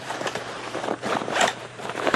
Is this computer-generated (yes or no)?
yes